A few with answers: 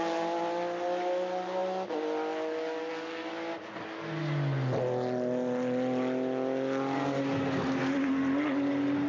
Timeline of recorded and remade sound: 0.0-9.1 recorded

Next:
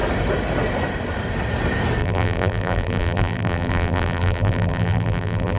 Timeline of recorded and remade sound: 0.0-2.0 recorded; 2.0-5.6 remade

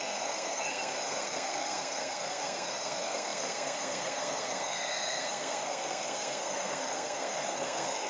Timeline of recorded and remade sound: 0.0-8.1 remade

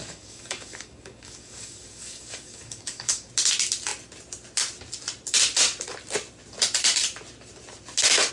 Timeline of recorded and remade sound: 0.0-3.3 remade; 3.3-8.3 recorded

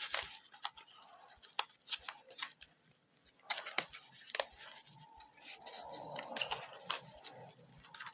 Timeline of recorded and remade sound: 0.0-8.1 recorded

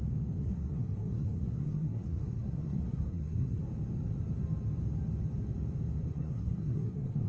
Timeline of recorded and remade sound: 0.0-0.4 recorded; 0.4-3.6 remade; 3.6-6.1 recorded; 6.1-7.3 remade

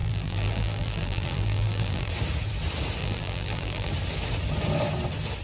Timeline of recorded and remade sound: 0.0-2.1 remade; 2.1-3.0 recorded; 3.0-3.9 remade; 3.9-5.4 recorded

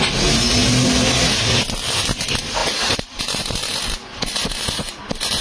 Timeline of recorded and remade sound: 0.0-2.6 recorded; 2.6-3.2 remade; 3.2-3.7 recorded; 3.7-5.0 remade; 5.0-5.4 recorded